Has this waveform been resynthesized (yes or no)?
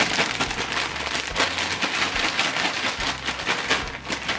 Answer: no